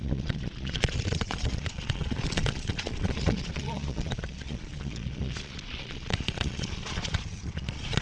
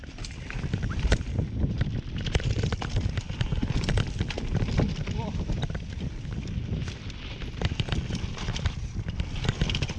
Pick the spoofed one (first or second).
first